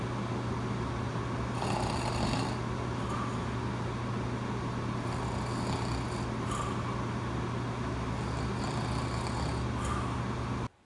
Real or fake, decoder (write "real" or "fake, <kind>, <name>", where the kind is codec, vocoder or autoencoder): real